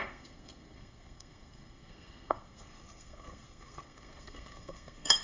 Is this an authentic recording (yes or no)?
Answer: no